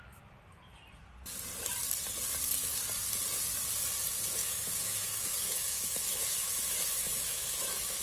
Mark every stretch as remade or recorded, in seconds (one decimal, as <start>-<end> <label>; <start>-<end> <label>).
0.0-4.4 recorded; 4.4-8.0 remade